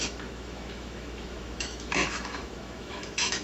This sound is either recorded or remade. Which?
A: remade